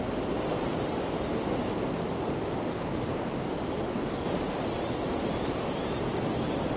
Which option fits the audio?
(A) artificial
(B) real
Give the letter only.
B